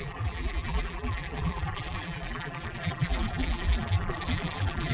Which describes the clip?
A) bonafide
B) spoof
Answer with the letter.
B